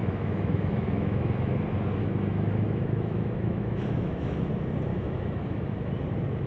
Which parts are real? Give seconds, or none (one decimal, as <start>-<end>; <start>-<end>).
1.5-2.0; 4.5-4.9; 5.9-6.5